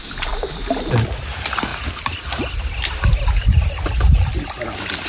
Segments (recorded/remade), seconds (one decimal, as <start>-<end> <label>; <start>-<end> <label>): 0.0-5.1 recorded